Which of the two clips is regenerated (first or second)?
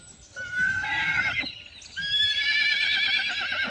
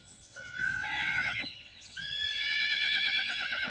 second